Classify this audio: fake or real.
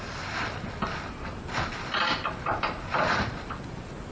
real